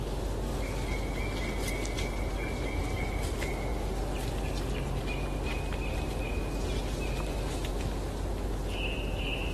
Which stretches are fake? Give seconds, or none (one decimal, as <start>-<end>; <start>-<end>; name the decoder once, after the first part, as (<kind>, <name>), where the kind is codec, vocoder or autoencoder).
none